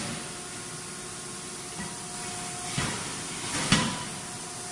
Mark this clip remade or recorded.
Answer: recorded